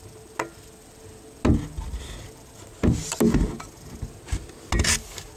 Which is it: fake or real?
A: real